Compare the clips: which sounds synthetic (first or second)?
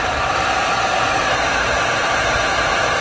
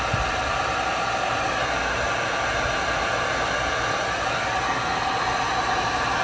first